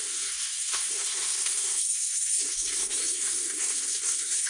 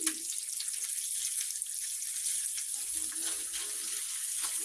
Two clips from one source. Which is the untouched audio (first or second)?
second